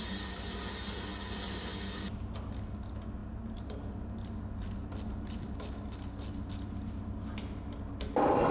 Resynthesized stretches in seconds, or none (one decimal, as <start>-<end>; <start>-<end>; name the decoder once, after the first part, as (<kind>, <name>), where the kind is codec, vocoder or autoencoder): none